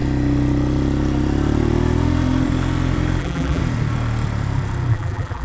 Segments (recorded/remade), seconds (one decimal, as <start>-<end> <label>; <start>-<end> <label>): 0.0-3.2 recorded; 3.2-3.6 remade; 3.6-4.9 recorded; 4.9-5.4 remade